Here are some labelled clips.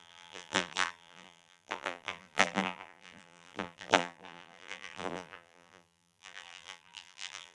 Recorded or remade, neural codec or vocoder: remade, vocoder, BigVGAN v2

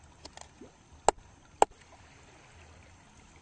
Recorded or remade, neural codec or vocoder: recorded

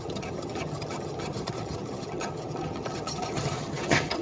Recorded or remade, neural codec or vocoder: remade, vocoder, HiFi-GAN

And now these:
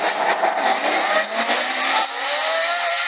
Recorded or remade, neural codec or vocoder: remade, vocoder, BigVGAN v2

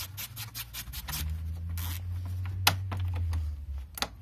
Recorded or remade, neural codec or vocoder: recorded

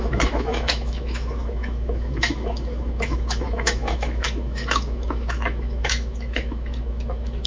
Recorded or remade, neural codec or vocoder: remade, autoencoder, DAC-VAE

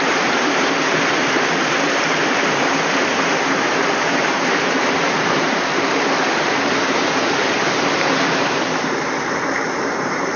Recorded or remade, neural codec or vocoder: remade, vocoder, BigVGAN v2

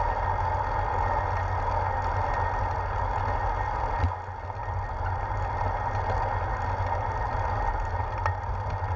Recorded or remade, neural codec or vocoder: recorded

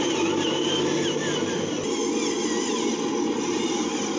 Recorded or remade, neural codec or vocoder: recorded